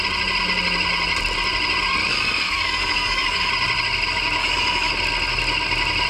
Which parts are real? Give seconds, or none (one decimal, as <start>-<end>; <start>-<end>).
0.0-2.1; 3.5-4.4; 4.9-6.1